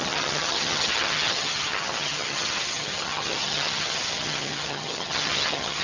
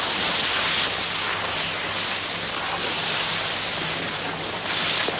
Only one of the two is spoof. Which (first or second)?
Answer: first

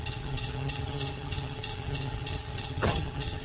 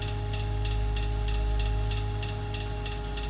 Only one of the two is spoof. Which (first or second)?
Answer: first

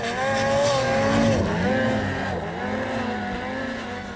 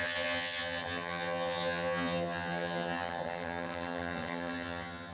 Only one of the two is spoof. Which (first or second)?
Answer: second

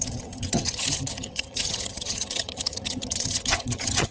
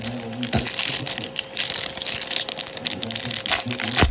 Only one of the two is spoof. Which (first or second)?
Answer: first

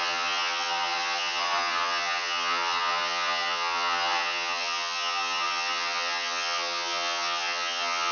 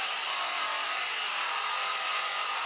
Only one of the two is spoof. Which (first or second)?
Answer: first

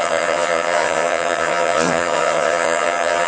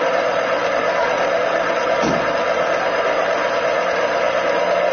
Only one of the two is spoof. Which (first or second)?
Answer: first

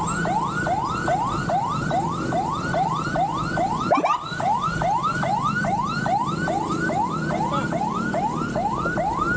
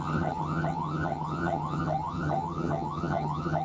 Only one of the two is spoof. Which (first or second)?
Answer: second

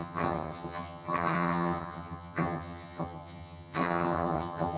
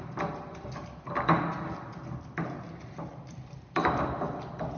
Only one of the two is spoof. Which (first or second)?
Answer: first